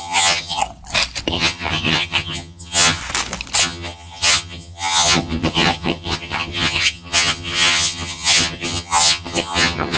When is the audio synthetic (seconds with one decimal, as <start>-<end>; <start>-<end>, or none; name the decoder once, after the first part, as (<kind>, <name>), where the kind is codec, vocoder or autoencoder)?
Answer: 0.0-0.6 (vocoder, HiFi-GAN); 1.3-3.0; 3.6-10.0